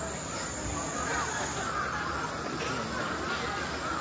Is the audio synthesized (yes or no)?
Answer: no